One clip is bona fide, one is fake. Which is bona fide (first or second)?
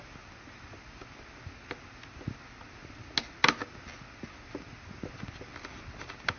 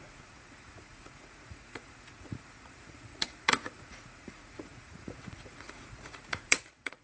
first